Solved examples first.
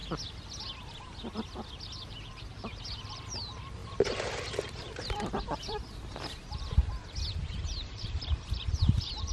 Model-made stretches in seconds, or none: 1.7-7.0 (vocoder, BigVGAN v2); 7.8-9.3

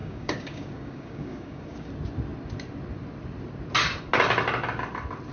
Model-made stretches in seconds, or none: 0.0-1.9 (codec, DAC)